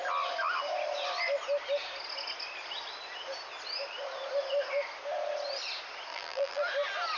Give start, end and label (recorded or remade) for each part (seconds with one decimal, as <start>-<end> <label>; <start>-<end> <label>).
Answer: 0.0-6.1 recorded; 6.1-6.6 remade; 6.6-7.2 recorded